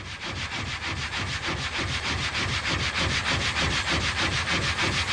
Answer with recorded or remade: recorded